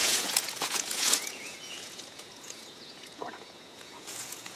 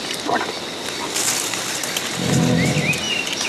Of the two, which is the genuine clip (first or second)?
second